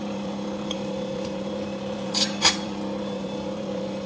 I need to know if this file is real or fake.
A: fake